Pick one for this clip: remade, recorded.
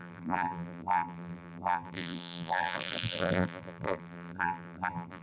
remade